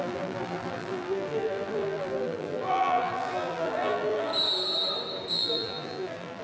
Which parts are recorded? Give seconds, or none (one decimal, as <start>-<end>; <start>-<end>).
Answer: 4.3-5.3